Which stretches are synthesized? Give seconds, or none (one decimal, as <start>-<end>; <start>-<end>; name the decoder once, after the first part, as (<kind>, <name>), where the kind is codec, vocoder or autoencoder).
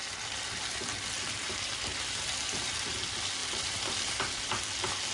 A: 3.4-4.2 (vocoder, BigVGAN v2)